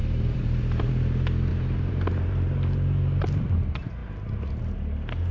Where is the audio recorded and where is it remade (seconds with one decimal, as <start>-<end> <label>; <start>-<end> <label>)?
0.0-0.9 remade; 0.9-1.5 recorded; 1.5-3.5 remade; 3.5-5.3 recorded

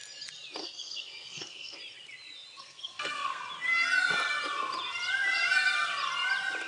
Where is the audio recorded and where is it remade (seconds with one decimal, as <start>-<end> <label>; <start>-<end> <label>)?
0.0-0.6 recorded; 0.6-1.8 remade; 1.8-2.6 recorded; 2.6-3.4 remade; 3.4-6.7 recorded

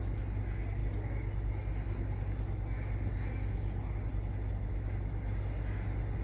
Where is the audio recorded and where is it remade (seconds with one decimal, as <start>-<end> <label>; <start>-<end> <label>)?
0.0-6.2 recorded

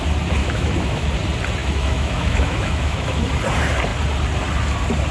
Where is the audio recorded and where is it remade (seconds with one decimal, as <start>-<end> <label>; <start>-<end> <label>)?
0.0-0.4 recorded; 0.4-1.1 remade; 1.1-1.6 recorded; 1.6-3.2 remade; 3.2-5.1 recorded

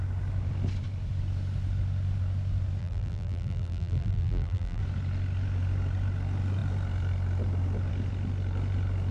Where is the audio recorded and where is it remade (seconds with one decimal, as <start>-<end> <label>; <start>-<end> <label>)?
0.0-2.8 recorded; 2.8-4.8 remade; 4.8-9.1 recorded

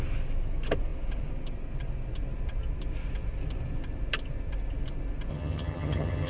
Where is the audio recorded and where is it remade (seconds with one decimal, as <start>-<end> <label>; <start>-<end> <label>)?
0.0-5.3 recorded; 5.3-6.3 remade

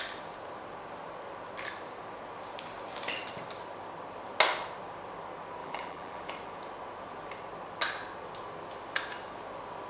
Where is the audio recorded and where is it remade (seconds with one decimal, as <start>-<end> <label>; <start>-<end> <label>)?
0.0-5.6 recorded; 5.6-6.3 remade; 6.3-9.9 recorded

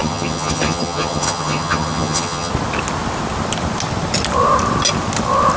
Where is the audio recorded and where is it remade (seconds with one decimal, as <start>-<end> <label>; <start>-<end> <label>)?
0.0-2.5 remade; 2.5-5.6 recorded